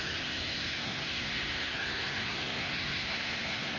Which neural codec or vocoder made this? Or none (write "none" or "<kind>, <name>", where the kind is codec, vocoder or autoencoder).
codec, SNAC